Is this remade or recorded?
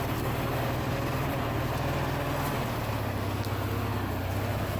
recorded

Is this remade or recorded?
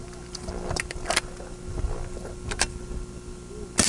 recorded